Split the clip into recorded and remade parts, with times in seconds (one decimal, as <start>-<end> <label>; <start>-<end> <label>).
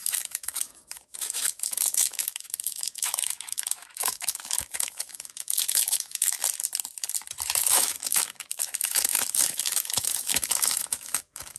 0.0-6.4 remade; 6.4-7.5 recorded; 7.5-11.6 remade